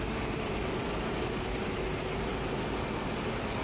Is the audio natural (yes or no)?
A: yes